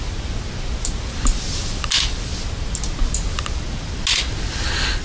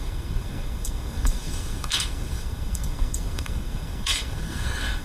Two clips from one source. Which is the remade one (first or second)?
second